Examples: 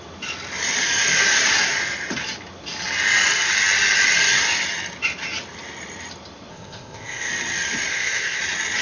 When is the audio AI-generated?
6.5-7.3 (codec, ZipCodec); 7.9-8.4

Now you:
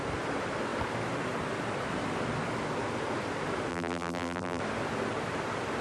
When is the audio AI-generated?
3.7-4.6 (vocoder, BigVGAN v2)

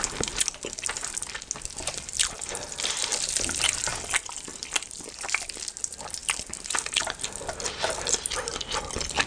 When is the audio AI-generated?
3.1-3.8 (vocoder, BigVGAN v2); 4.5-5.6

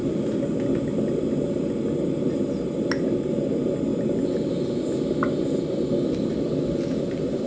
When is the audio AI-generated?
none

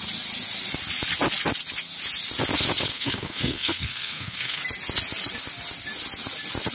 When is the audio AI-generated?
2.9-4.6 (codec, SNAC)

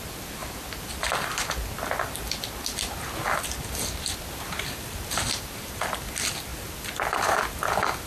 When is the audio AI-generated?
none

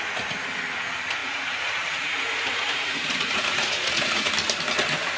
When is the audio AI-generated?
1.2-4.3 (vocoder, Vocos)

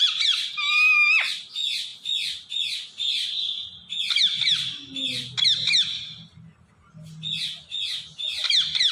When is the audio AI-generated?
none